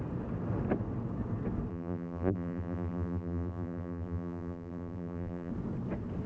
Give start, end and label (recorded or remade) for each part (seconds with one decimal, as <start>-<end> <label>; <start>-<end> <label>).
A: 0.0-1.7 recorded; 1.7-5.5 remade; 5.5-6.3 recorded